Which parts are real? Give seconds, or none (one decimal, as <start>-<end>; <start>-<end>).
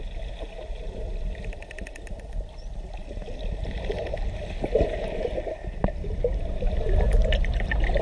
0.0-8.0